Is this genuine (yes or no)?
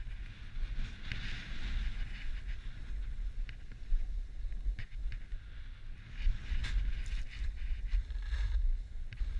yes